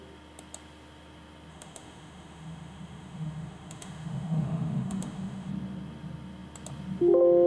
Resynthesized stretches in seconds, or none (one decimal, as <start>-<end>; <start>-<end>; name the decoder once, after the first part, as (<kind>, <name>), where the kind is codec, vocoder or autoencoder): 1.5-5.5 (autoencoder, DAC-VAE)